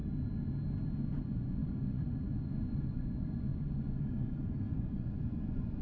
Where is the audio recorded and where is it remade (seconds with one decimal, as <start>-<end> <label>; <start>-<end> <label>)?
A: 0.0-1.2 recorded; 1.2-5.8 remade